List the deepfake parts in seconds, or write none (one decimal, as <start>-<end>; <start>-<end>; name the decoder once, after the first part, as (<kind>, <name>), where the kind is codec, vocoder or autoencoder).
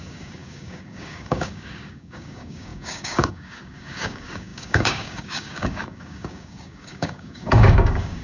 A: 0.0-8.2 (codec, DAC)